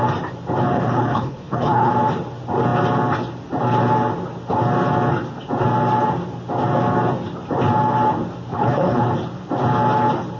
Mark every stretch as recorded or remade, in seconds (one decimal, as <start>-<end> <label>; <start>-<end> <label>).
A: 0.0-0.7 recorded; 0.7-1.9 remade; 1.9-8.5 recorded; 8.5-9.1 remade; 9.1-10.4 recorded